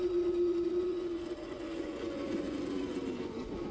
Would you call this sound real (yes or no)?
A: no